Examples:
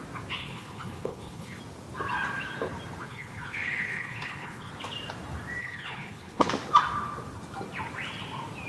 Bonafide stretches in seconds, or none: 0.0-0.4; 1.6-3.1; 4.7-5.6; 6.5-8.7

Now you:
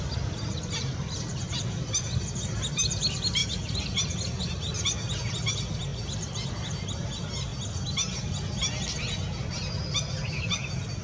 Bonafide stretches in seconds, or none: 0.0-11.0